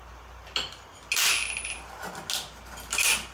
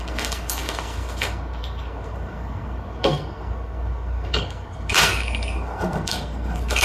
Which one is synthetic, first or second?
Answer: second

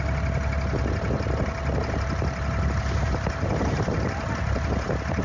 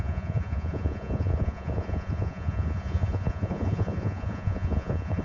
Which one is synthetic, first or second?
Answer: second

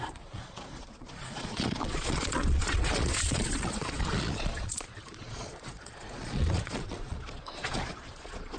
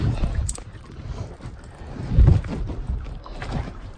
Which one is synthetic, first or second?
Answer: first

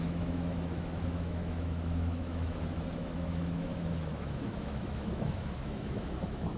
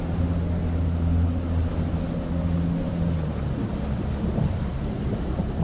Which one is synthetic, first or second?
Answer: first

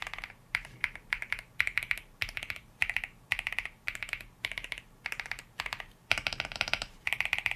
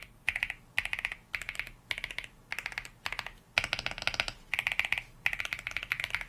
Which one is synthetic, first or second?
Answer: first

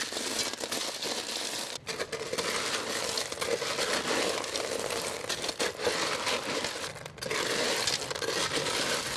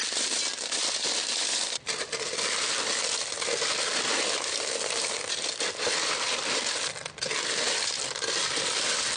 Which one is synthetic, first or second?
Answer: second